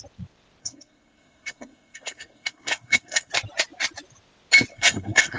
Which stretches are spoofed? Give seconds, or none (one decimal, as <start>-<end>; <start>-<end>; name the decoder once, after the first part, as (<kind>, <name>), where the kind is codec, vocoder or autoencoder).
0.6-3.3 (codec, SNAC); 4.7-5.4